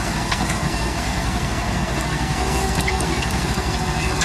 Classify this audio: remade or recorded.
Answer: remade